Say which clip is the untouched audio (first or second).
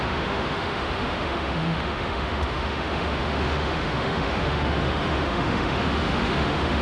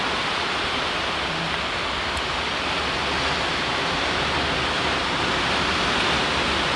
second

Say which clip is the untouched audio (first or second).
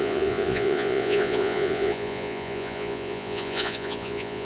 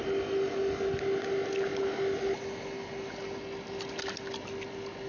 second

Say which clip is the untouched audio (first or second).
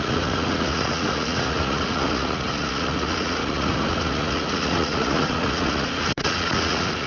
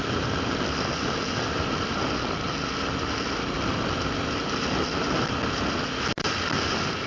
second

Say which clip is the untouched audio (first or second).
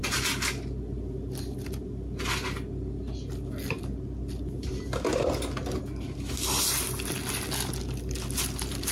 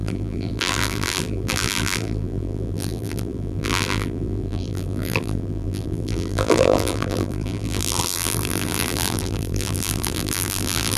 first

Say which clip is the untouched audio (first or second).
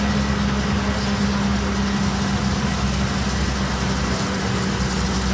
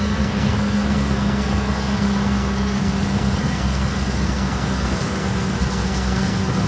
first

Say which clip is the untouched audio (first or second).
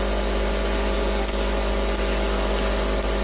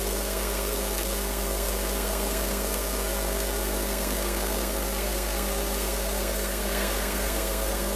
first